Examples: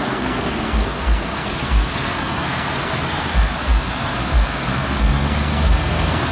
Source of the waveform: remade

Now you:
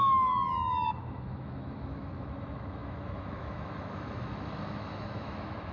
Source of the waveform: remade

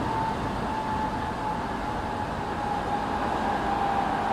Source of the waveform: recorded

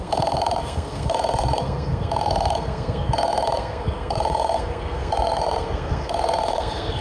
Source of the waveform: remade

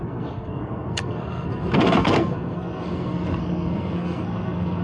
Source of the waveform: remade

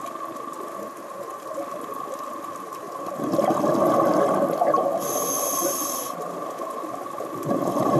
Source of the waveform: recorded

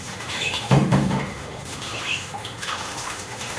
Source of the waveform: remade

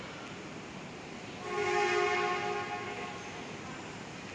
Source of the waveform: recorded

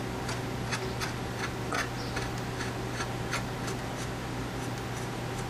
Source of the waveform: recorded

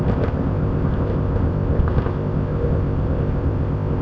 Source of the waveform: remade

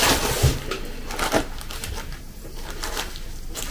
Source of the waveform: recorded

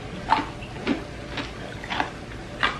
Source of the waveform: recorded